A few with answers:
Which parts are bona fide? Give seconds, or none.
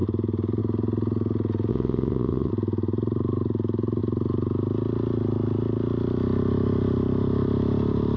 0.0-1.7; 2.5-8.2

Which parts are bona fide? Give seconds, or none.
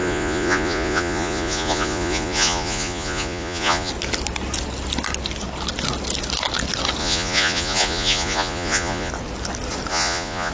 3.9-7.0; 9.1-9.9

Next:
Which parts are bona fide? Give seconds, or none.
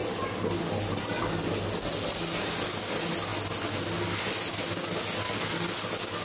0.0-6.2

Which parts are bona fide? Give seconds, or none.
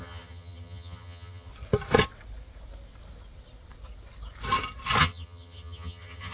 1.5-5.0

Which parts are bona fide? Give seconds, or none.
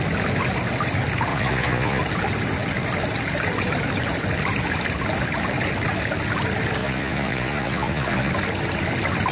0.0-1.3; 2.0-6.8; 8.3-9.3